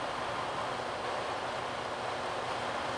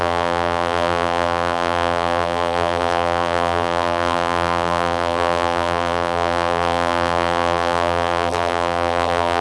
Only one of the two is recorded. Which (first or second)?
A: first